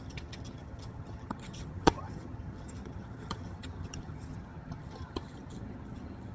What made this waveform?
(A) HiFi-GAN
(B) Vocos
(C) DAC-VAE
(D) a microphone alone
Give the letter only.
A